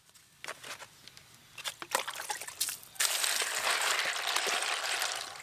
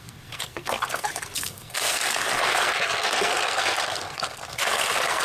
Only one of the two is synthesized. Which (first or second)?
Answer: second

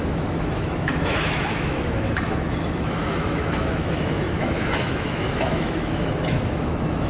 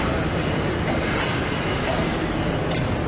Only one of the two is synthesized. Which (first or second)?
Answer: first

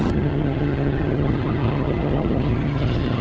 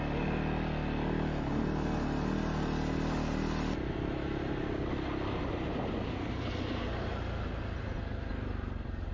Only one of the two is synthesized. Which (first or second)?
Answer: first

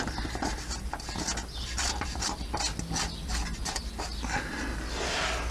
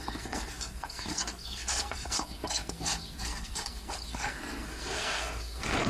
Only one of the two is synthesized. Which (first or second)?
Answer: second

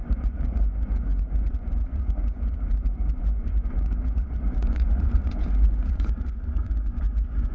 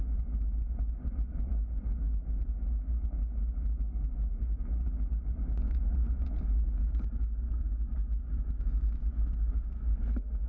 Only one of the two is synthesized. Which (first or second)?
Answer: first